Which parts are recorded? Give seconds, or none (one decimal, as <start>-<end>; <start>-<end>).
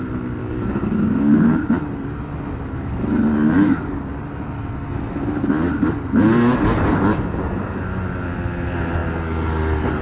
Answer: 0.0-0.4; 1.7-10.0